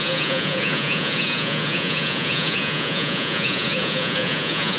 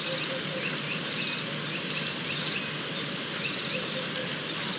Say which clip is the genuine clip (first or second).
second